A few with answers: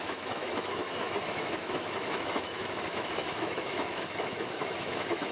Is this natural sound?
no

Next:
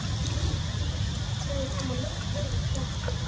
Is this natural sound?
yes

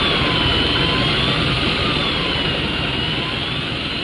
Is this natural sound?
yes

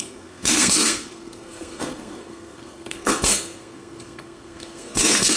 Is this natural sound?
no